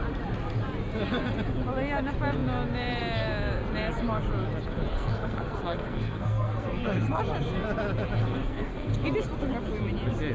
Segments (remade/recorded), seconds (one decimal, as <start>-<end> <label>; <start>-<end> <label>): 0.0-4.9 recorded; 4.9-7.2 remade; 7.2-8.2 recorded; 8.2-8.9 remade; 8.9-10.3 recorded